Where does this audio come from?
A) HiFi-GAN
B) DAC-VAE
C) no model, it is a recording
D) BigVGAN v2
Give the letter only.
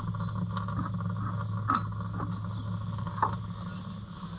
C